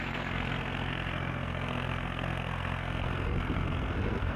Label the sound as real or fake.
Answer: fake